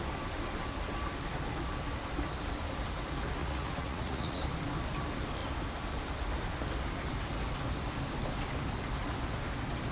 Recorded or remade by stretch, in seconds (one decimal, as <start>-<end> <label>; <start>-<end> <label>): 0.0-3.4 recorded; 3.4-4.4 remade; 4.4-9.9 recorded